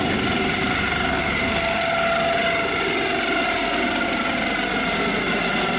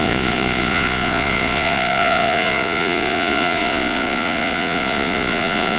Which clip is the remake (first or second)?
second